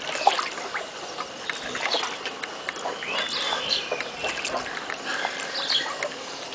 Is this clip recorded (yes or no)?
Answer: yes